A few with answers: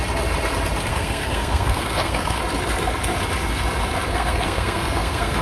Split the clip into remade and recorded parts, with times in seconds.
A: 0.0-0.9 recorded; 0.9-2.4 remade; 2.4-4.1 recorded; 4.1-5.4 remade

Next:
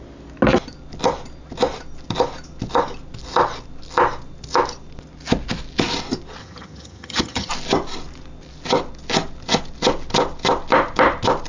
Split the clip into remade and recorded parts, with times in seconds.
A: 0.0-6.4 recorded; 6.4-7.5 remade; 7.5-11.5 recorded

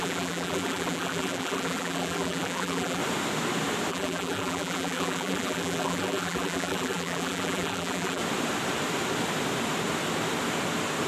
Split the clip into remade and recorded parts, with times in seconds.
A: 0.0-3.0 remade; 3.0-3.9 recorded; 3.9-8.2 remade; 8.2-11.1 recorded

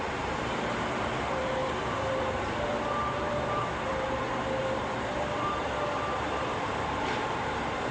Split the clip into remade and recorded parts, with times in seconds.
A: 0.0-3.9 remade; 3.9-4.6 recorded; 4.6-7.9 remade

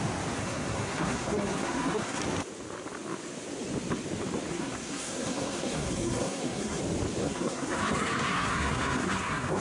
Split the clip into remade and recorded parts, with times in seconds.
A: 0.0-0.4 recorded; 0.4-2.2 remade; 2.2-4.5 recorded; 4.5-6.8 remade; 6.8-7.2 recorded; 7.2-9.6 remade

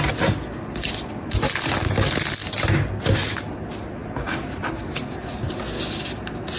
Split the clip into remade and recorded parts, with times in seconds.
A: 0.0-6.6 recorded

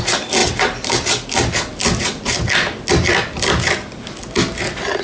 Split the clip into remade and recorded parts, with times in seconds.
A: 0.0-5.0 recorded